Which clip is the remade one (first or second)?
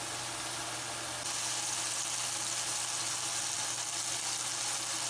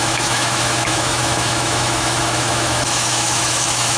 second